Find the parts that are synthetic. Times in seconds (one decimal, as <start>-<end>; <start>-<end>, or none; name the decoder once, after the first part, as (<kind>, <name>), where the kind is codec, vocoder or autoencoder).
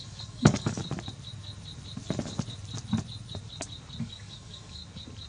0.0-0.8 (codec, DAC); 4.0-4.8